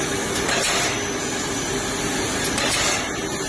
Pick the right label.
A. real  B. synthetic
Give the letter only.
A